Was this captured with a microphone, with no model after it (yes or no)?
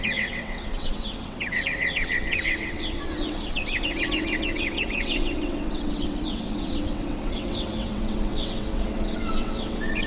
no